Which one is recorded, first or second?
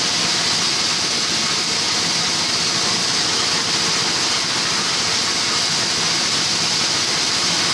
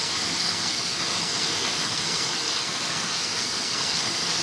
first